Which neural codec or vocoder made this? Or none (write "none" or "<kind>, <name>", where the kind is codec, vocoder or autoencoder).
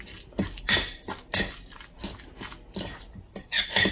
none